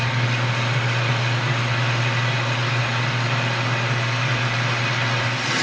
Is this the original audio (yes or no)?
yes